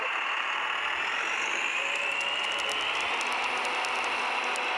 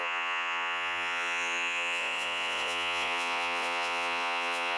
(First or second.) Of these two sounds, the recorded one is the first